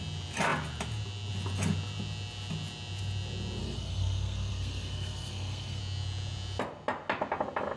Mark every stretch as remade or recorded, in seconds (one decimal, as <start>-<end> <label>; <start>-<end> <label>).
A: 0.0-3.6 recorded; 3.6-5.8 remade; 5.8-7.8 recorded